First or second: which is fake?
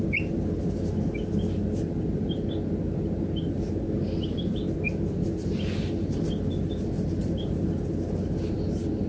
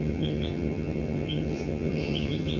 second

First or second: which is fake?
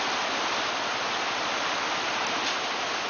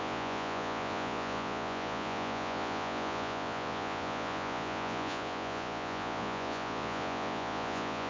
second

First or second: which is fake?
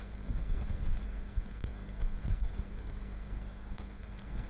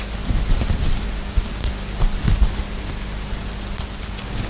first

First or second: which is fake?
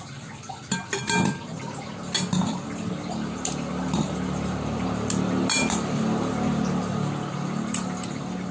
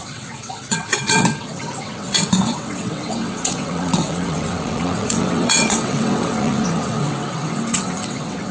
second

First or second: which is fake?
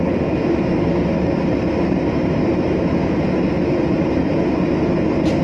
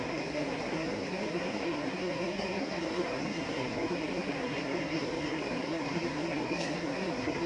second